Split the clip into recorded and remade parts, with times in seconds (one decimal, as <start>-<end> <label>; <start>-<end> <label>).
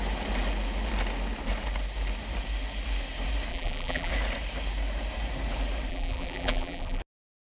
0.0-3.5 recorded; 3.5-4.1 remade; 4.1-5.9 recorded; 5.9-7.0 remade; 7.0-7.5 recorded